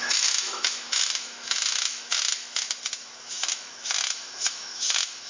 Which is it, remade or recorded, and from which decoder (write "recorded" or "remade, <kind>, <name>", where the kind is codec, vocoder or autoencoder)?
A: remade, autoencoder, DAC-VAE